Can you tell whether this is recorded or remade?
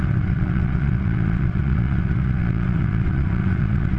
remade